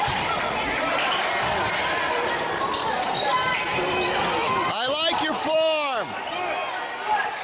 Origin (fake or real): real